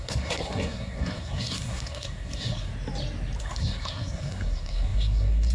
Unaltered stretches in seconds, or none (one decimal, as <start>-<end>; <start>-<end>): 2.7-3.4